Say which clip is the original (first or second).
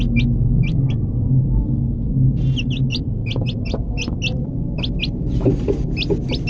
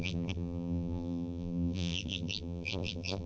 first